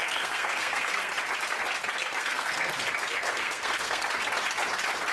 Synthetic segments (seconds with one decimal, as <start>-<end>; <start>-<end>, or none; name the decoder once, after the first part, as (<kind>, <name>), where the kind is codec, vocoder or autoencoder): 0.0-1.1 (codec, SNAC); 2.0-2.7; 3.1-4.1